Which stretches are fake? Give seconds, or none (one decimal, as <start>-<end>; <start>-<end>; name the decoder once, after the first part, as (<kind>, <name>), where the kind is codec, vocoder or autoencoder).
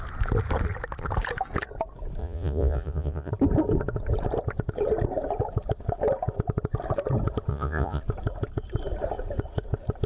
2.2-3.3 (vocoder, Vocos); 7.5-8.0